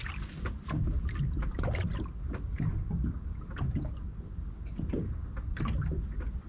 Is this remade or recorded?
recorded